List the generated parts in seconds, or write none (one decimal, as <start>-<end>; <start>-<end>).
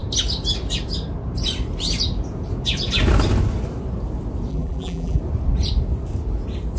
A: 4.5-5.2